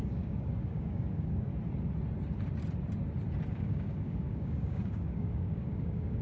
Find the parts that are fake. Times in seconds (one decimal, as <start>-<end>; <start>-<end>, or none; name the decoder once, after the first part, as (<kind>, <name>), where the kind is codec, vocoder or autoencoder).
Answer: 0.0-1.5 (codec, DAC); 3.5-6.2